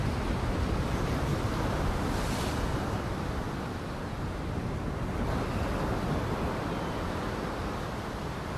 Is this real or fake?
real